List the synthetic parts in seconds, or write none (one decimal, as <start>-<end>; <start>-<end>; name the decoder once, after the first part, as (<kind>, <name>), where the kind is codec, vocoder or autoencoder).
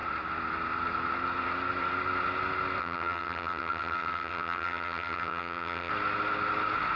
2.8-5.9 (vocoder, HiFi-GAN)